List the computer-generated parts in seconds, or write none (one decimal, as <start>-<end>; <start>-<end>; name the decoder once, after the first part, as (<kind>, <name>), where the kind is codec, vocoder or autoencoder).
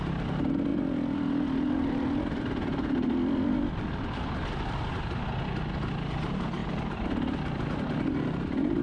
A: 0.7-4.6 (vocoder, BigVGAN v2)